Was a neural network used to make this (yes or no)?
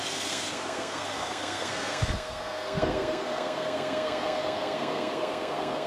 yes